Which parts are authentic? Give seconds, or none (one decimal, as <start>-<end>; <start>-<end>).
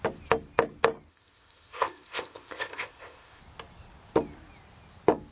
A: 0.0-1.1; 3.4-5.3